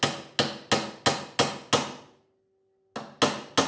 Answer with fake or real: real